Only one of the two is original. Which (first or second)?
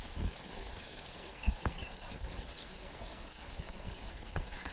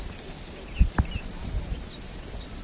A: second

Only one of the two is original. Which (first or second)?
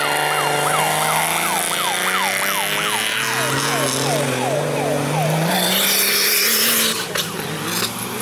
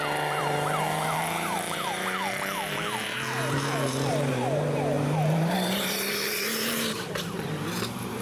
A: first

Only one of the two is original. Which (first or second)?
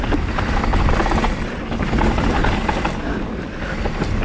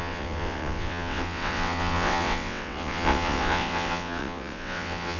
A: first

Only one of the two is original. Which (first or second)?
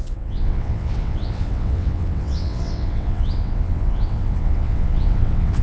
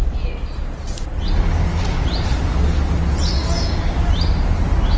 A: second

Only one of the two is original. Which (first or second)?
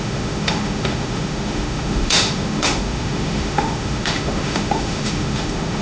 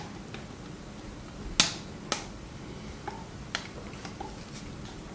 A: second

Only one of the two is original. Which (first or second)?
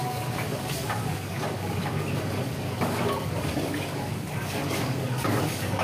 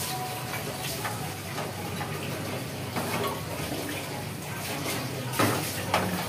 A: second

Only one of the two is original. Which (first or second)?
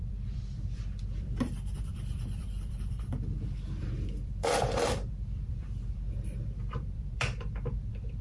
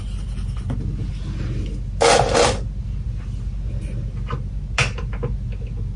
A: second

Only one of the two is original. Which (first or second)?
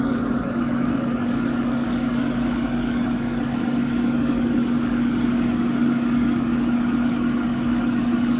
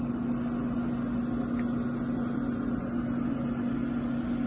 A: second